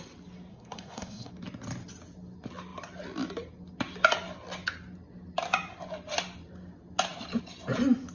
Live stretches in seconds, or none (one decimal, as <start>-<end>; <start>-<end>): 0.0-0.5; 1.3-8.1